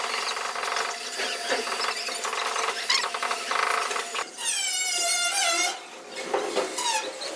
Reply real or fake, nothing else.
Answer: real